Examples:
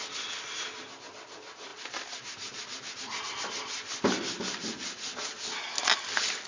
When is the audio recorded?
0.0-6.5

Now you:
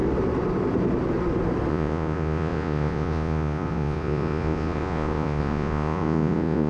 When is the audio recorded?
0.0-1.7

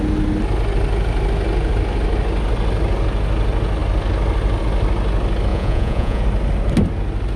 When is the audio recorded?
0.0-5.5; 6.2-7.4

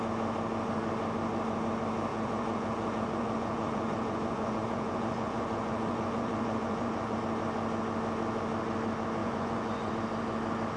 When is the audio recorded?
0.0-2.1; 7.2-9.2; 9.9-10.8

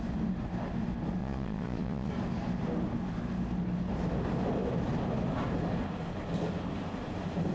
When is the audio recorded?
0.0-1.2; 2.1-7.5

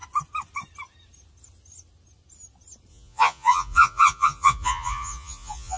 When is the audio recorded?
0.0-2.9

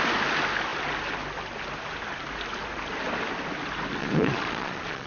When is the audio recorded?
0.0-4.0